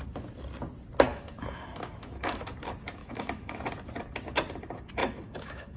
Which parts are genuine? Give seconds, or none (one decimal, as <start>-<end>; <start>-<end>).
0.0-1.1; 2.5-3.0; 3.6-5.0